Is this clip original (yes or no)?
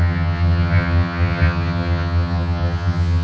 no